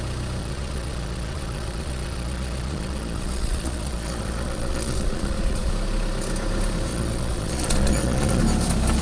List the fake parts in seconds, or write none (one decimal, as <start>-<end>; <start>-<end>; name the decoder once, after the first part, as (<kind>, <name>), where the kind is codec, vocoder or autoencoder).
0.4-5.7 (vocoder, Vocos); 6.9-8.4